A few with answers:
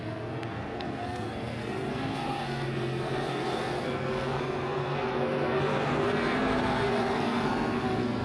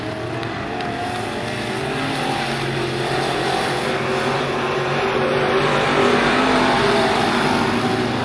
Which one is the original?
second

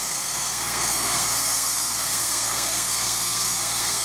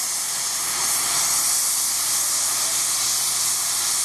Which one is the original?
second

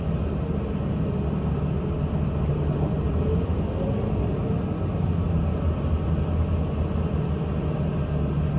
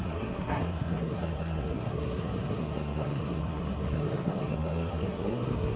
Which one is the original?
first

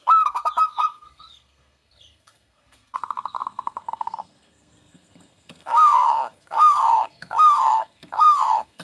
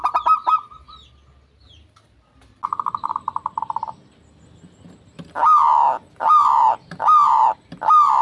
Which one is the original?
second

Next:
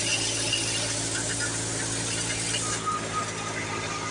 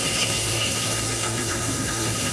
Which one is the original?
first